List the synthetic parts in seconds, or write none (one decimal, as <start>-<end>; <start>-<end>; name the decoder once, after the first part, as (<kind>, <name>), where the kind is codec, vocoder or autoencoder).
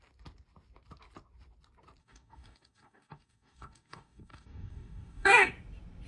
2.0-5.5 (codec, DAC)